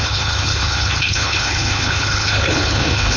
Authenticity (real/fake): fake